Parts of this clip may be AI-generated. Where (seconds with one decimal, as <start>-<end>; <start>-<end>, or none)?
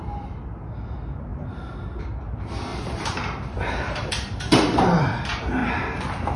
1.3-2.0; 2.7-5.0